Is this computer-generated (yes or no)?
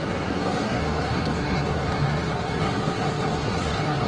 yes